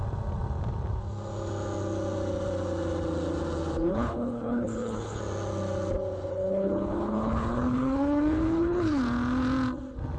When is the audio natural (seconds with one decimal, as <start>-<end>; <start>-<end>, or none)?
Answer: 0.0-3.9; 5.2-6.3; 9.0-10.2